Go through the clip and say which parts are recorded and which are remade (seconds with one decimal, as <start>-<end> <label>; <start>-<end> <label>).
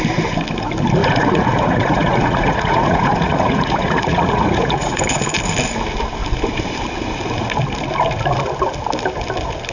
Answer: 0.0-1.0 recorded; 1.0-5.0 remade; 5.0-9.7 recorded